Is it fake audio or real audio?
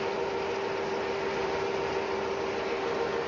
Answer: real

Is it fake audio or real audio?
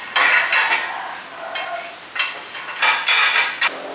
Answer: real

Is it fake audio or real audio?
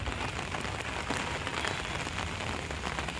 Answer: real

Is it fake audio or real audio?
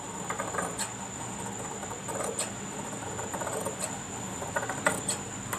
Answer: real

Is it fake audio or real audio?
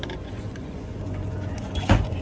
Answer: fake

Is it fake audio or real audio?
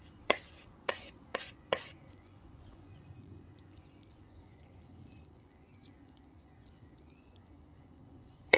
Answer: fake